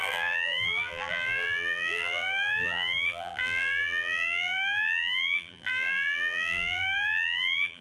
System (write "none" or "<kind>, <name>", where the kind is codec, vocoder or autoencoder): vocoder, BigVGAN v2